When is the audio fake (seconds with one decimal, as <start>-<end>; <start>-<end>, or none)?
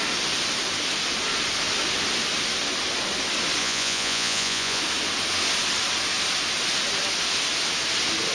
3.6-4.8